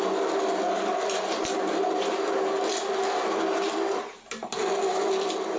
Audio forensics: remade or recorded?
recorded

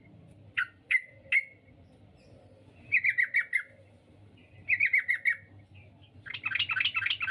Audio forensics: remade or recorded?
recorded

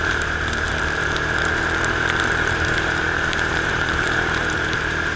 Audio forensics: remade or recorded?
remade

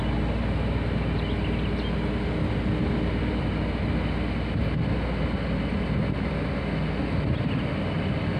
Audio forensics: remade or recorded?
recorded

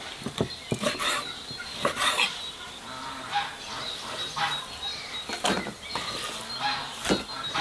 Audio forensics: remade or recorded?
recorded